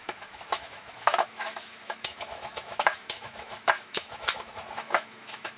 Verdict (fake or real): fake